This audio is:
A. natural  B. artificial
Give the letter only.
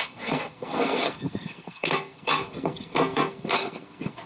B